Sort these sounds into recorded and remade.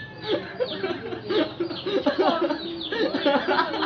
recorded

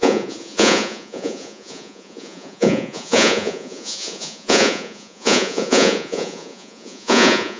remade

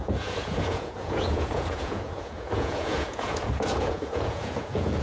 remade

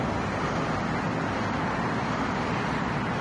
recorded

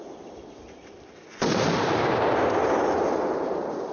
recorded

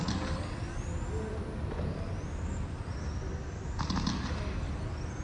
recorded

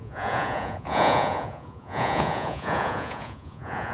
remade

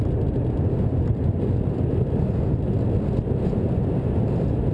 recorded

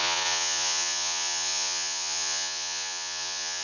remade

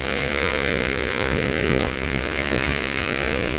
remade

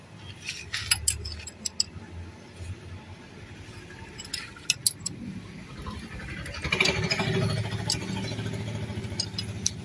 recorded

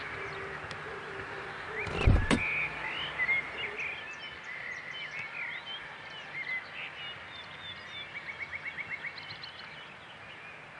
recorded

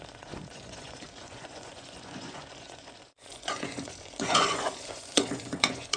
remade